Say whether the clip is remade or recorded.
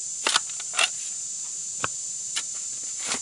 recorded